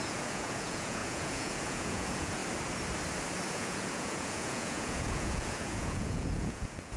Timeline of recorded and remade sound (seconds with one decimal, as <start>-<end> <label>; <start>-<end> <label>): 0.0-2.4 remade; 2.4-3.5 recorded; 3.5-7.0 remade